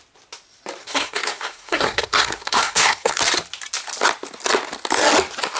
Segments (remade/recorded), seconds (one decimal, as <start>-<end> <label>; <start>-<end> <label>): 0.0-0.8 recorded; 0.8-3.2 remade; 3.2-5.6 recorded